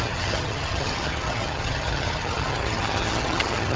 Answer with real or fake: fake